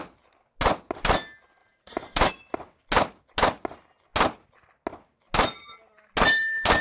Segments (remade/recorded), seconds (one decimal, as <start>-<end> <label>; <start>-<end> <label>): 0.0-1.6 recorded; 1.6-2.3 remade; 2.3-6.8 recorded